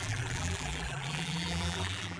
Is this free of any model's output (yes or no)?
no